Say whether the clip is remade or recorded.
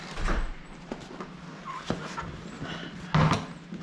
recorded